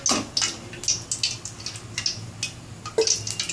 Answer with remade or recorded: recorded